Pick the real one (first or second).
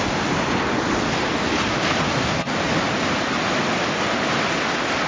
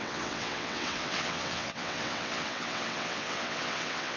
first